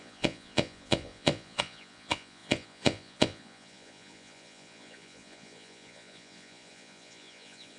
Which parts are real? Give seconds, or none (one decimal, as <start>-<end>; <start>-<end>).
none